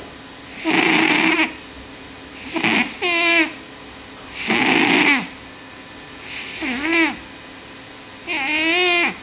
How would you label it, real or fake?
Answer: real